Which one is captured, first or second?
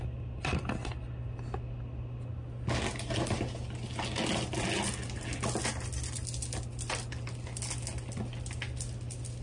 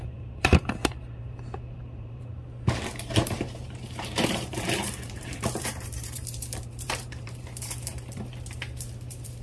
first